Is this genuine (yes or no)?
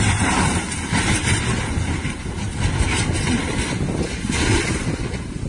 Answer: yes